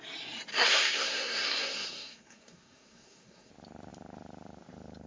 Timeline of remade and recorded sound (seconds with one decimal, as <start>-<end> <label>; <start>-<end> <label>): 0.0-0.5 recorded; 0.5-3.5 remade; 3.5-5.1 recorded